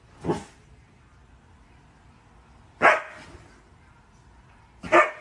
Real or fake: fake